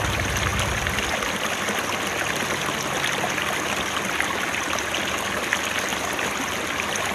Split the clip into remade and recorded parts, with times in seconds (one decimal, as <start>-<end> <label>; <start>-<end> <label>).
0.0-5.9 recorded; 5.9-6.4 remade; 6.4-7.1 recorded